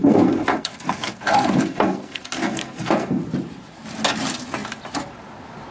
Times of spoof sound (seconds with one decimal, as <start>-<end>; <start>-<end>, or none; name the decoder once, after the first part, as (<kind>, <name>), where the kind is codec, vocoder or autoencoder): 0.0-3.2 (codec, SNAC)